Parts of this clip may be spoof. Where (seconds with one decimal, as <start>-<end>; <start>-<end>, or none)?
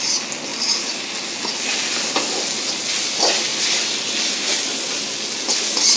none